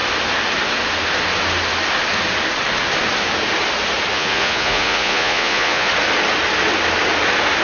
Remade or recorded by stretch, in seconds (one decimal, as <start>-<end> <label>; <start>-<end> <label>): 0.0-4.1 recorded; 4.1-5.9 remade; 5.9-7.6 recorded